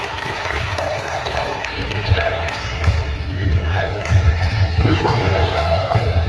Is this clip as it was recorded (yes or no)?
no